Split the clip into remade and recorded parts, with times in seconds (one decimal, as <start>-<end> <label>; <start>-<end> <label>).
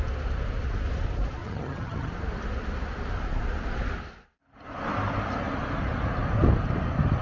0.0-1.4 recorded; 1.4-2.1 remade; 2.1-7.2 recorded